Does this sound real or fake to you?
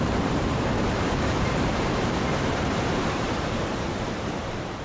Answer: fake